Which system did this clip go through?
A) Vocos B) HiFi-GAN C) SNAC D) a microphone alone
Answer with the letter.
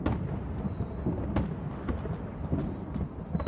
D